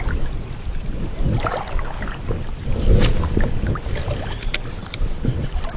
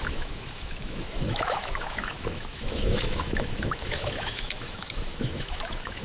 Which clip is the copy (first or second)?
second